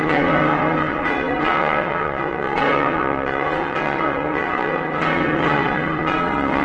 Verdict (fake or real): fake